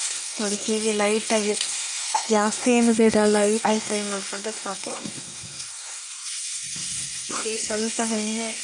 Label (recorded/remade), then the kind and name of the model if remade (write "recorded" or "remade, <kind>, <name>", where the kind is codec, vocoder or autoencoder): remade, codec, SNAC